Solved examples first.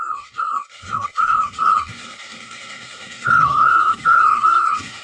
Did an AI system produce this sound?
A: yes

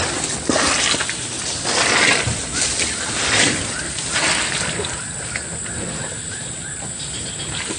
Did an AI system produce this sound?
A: no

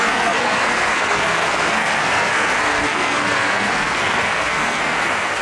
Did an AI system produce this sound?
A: yes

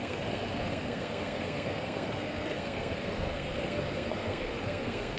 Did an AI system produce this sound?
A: yes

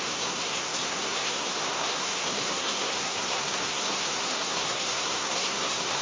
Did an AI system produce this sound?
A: yes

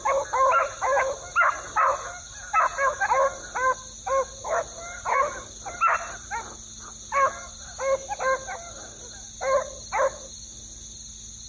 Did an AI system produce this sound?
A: no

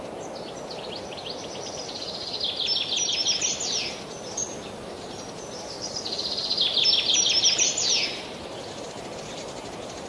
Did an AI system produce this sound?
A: no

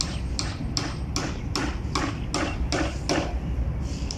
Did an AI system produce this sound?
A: no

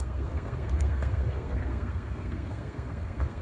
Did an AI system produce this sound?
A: yes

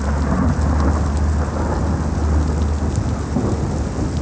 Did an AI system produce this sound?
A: no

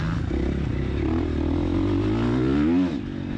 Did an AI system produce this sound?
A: no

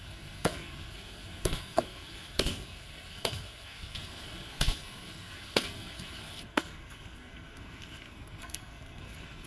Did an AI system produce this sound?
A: yes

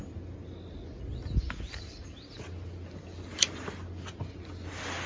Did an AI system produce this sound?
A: no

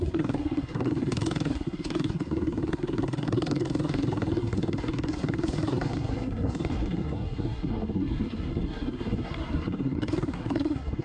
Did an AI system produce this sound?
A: yes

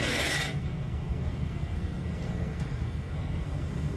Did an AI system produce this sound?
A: yes